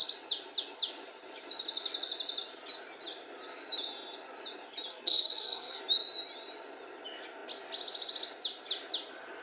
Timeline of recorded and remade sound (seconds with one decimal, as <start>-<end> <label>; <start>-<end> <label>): 0.0-4.9 recorded; 4.9-5.8 remade; 5.8-9.4 recorded